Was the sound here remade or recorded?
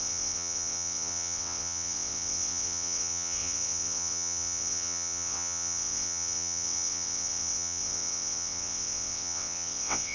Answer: remade